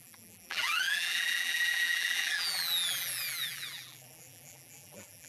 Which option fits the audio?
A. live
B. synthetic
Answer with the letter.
B